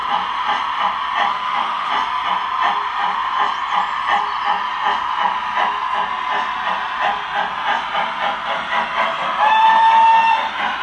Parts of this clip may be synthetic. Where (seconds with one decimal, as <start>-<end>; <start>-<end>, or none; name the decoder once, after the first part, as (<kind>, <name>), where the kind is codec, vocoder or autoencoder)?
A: 1.3-1.9 (autoencoder, DAC-VAE)